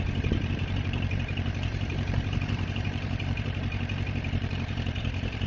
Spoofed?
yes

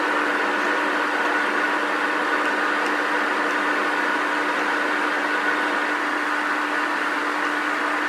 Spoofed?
no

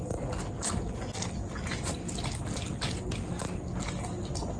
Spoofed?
no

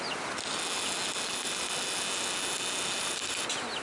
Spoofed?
no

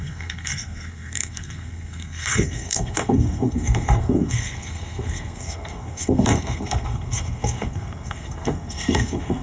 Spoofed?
yes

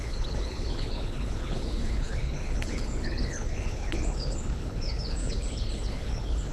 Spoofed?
yes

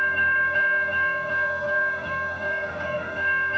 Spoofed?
yes